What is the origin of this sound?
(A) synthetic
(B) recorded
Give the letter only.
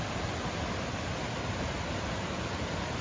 B